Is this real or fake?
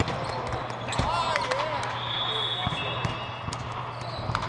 real